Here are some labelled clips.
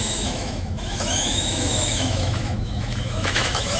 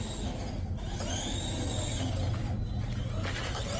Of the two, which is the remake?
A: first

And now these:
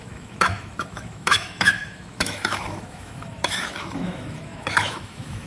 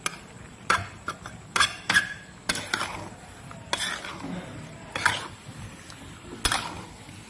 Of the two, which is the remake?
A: first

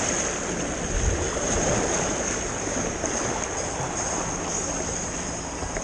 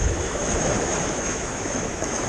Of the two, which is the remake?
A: second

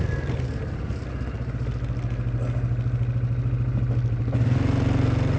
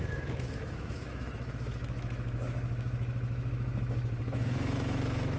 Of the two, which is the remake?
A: second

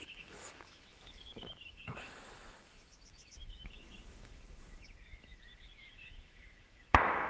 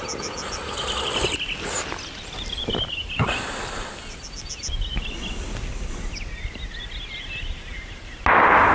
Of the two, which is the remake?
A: first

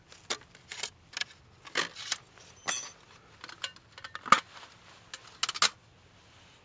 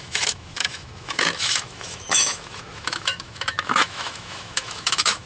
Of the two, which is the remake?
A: second